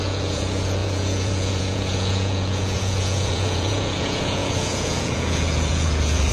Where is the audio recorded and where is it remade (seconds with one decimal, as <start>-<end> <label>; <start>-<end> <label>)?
0.0-6.3 remade